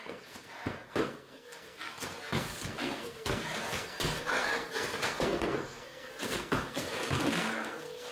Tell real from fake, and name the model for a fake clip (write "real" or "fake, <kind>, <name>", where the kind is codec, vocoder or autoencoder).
fake, codec, SNAC